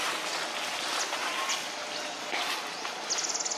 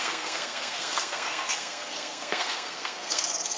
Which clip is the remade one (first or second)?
second